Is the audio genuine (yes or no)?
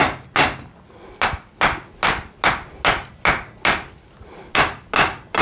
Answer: yes